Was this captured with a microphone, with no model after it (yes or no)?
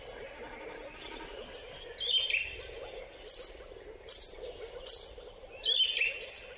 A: yes